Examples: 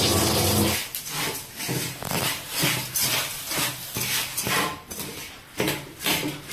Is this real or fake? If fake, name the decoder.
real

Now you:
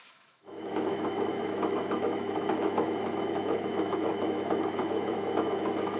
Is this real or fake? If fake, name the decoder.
fake, autoencoder, DAC-VAE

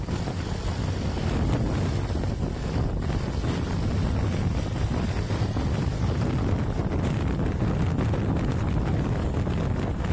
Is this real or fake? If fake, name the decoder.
real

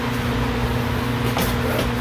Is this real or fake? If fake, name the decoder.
real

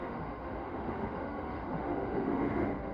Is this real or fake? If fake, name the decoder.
fake, autoencoder, DAC-VAE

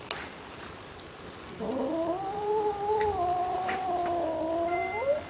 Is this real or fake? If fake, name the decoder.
real